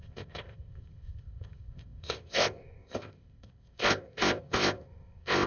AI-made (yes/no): yes